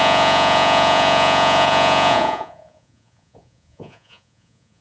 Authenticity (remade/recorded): remade